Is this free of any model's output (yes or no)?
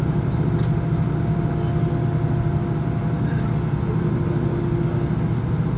yes